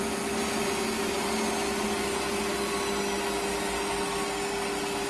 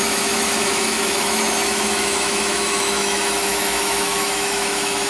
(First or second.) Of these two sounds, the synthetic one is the second